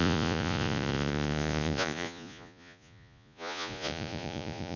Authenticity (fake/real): fake